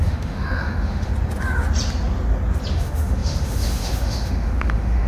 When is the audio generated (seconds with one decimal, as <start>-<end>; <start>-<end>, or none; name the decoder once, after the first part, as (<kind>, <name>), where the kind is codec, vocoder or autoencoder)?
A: 0.0-1.1 (autoencoder, DAC-VAE); 2.7-5.1

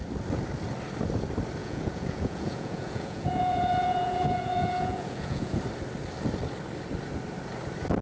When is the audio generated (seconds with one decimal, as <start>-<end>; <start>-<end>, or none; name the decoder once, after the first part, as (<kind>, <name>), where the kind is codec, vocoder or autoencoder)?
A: 1.6-5.6 (vocoder, Vocos)

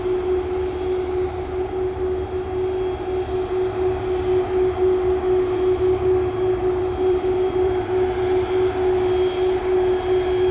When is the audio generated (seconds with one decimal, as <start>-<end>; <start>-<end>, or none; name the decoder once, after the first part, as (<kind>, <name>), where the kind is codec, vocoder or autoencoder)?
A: 6.6-7.9 (vocoder, BigVGAN v2)